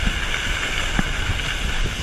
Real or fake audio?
real